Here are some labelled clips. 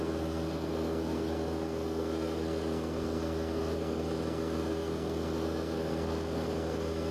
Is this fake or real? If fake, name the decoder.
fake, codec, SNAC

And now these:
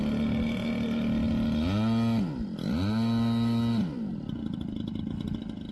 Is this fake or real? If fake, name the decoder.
real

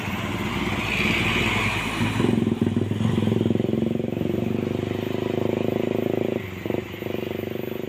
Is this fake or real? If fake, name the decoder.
real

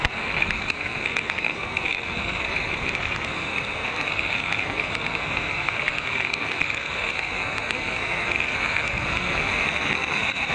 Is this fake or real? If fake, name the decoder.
fake, codec, SNAC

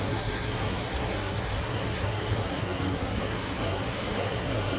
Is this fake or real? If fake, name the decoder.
fake, codec, SNAC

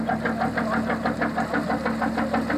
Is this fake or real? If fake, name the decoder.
real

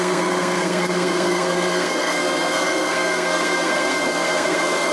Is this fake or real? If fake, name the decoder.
fake, codec, SNAC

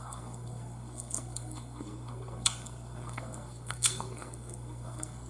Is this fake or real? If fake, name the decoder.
fake, codec, SNAC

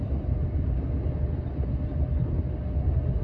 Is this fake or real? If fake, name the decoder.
real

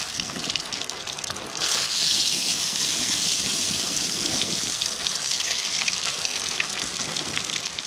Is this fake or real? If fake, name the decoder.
fake, codec, SNAC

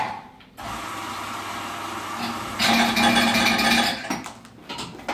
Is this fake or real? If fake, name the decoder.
real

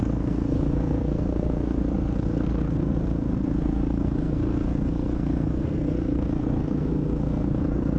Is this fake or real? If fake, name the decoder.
fake, codec, SNAC